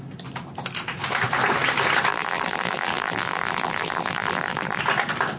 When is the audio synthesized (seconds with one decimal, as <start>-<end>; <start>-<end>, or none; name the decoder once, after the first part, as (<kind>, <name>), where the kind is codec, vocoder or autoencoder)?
2.1-4.8 (vocoder, BigVGAN v2)